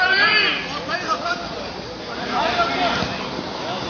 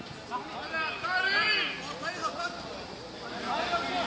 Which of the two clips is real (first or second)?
second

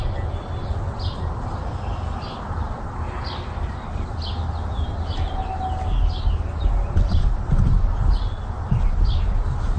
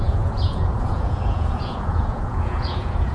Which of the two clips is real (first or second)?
first